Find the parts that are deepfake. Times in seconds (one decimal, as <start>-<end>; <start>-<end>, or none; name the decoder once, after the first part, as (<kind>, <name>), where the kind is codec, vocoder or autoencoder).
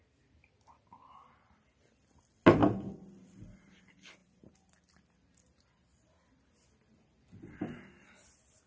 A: none